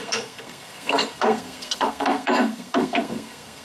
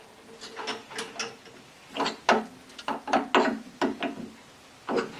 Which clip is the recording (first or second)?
second